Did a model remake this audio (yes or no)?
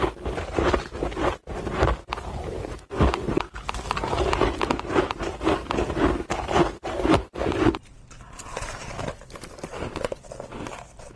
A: no